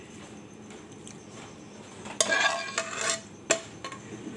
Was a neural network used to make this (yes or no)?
no